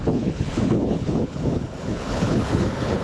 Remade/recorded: remade